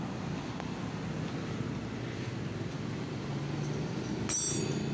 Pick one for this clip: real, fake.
real